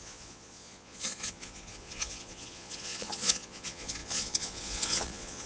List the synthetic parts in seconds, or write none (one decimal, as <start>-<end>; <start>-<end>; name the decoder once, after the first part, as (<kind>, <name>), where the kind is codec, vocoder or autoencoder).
0.0-5.5 (vocoder, Vocos)